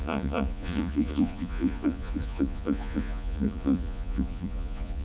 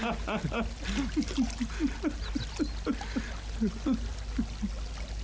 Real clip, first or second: second